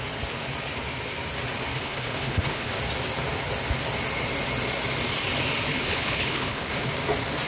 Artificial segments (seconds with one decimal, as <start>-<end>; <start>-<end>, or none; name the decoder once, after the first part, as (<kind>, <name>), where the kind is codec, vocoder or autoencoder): 1.7-2.7 (codec, HILCodec); 5.7-6.9

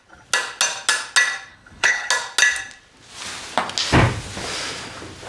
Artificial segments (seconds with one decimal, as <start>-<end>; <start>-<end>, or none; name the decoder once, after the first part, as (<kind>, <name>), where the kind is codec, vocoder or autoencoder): 1.5-2.1 (codec, HILCodec)

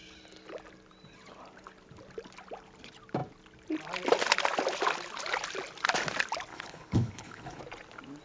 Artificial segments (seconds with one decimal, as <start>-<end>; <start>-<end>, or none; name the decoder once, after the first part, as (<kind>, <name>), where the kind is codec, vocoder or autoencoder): 6.5-7.6 (codec, HILCodec)

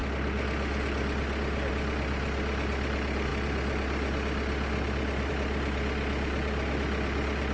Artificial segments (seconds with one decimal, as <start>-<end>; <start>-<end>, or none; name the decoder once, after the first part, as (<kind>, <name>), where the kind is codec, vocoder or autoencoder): none

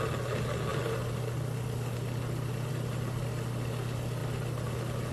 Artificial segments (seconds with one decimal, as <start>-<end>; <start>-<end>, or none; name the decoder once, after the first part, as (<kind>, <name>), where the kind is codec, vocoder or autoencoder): none